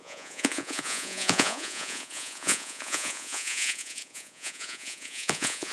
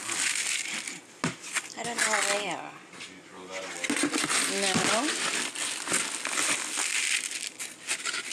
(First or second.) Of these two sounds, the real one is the second